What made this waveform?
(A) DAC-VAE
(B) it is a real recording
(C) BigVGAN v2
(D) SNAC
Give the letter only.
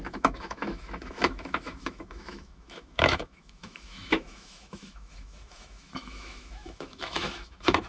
A